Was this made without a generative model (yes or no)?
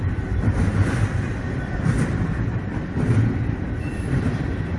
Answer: no